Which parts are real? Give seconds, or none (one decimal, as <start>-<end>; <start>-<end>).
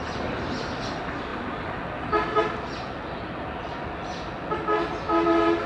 0.0-5.7